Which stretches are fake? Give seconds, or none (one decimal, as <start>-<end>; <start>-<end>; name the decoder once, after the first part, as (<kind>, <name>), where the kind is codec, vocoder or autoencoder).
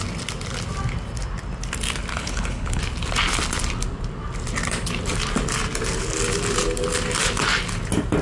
2.1-2.8 (codec, HILCodec)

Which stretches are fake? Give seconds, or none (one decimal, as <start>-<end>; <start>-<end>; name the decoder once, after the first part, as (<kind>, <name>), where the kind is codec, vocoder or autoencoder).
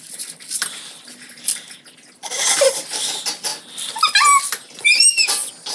none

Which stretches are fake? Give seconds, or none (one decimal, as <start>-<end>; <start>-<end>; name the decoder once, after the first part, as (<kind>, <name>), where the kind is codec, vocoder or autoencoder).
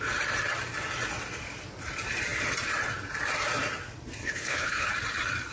4.2-4.9 (codec, HILCodec)